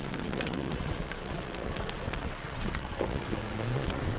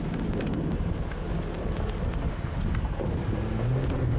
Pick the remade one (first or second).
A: first